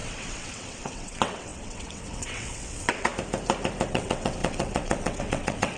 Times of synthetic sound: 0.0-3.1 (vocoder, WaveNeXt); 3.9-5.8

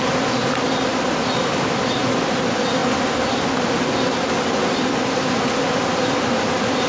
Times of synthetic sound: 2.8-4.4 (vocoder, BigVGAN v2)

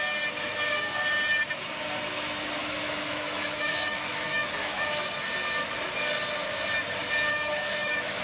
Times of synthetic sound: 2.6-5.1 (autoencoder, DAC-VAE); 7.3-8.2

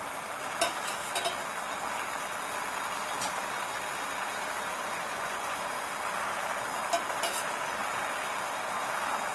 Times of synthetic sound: 4.8-5.8 (vocoder, Vocos)

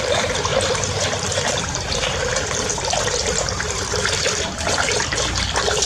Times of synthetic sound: 0.0-0.5 (vocoder, BigVGAN v2); 1.5-5.9